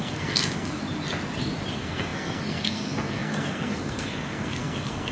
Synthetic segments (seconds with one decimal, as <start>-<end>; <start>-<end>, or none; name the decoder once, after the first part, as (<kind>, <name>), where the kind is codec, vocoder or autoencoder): 0.0-0.8 (codec, SNAC); 1.7-5.1